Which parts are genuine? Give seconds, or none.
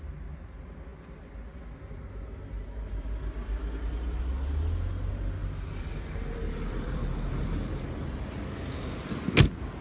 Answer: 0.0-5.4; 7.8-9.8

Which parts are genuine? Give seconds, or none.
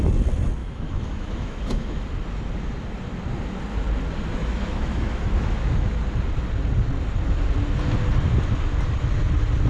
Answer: 0.0-0.6; 2.0-4.4; 6.0-9.7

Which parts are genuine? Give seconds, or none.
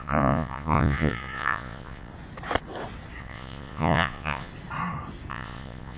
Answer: 2.1-3.2; 4.5-5.3